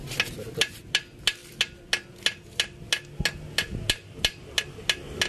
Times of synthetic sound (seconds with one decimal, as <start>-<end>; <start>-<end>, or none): none